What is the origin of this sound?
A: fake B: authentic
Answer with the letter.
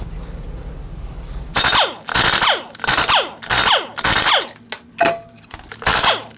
B